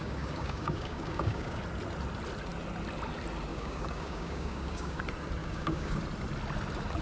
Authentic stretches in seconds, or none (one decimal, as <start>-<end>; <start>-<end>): 1.6-3.5; 5.0-5.4; 6.0-7.0

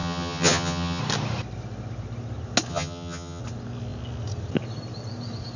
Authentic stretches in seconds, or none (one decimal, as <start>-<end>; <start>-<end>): 1.0-2.7; 3.4-5.6

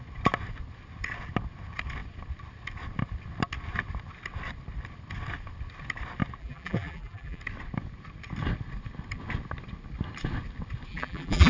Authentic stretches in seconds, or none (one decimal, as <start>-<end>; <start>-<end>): 0.0-6.4; 7.4-10.9

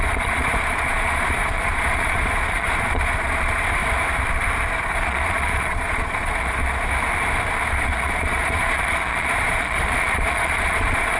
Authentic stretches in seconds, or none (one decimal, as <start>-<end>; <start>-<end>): 3.8-4.7; 6.6-7.7